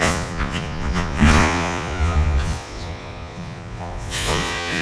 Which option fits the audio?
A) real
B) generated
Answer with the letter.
B